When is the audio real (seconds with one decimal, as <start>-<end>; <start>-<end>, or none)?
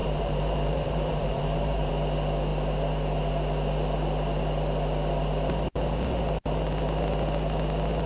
1.9-8.1